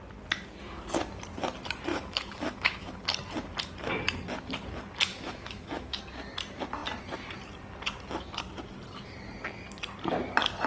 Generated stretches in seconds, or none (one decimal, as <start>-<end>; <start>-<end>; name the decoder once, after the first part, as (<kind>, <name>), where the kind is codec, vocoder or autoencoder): 1.9-2.9 (autoencoder, DAC-VAE); 5.1-6.0